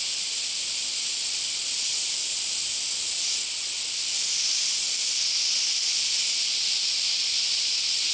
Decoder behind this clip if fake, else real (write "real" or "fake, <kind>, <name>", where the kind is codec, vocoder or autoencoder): real